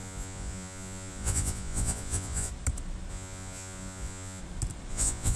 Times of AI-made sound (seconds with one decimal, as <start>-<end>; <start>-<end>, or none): 0.0-2.5; 3.1-4.4; 4.9-5.4